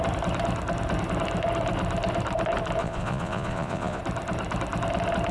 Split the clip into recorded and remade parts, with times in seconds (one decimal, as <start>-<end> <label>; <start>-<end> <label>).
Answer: 0.0-2.8 recorded; 2.8-4.0 remade; 4.0-5.3 recorded